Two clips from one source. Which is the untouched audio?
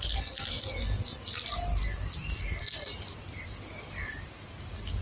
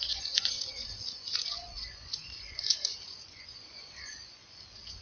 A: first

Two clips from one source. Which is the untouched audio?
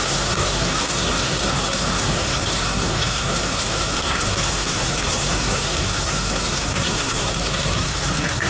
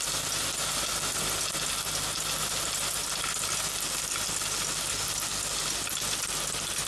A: second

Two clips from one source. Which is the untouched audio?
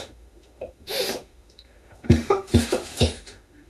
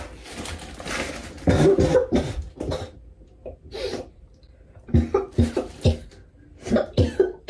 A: second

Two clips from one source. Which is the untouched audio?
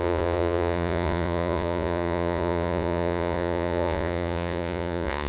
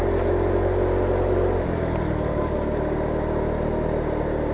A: second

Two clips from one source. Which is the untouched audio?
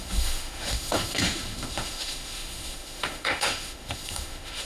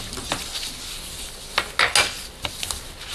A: second